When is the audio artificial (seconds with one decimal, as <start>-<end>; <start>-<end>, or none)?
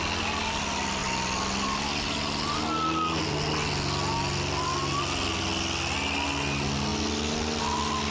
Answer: none